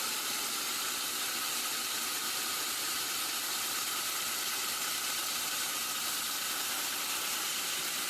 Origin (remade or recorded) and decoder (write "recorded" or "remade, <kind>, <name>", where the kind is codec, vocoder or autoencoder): recorded